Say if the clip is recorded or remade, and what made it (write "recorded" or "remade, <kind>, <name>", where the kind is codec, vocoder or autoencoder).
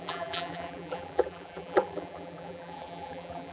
remade, vocoder, BigVGAN v2